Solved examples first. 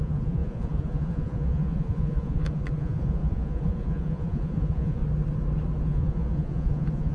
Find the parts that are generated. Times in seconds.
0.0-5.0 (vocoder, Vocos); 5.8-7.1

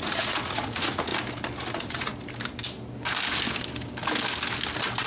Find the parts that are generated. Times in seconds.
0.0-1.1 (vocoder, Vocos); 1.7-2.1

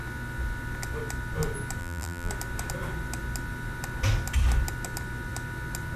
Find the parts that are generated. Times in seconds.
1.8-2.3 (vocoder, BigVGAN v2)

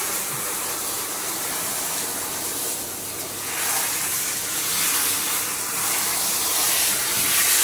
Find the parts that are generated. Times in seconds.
0.0-2.5 (vocoder, BigVGAN v2); 6.9-7.6